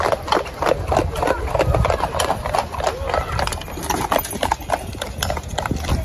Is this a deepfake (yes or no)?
no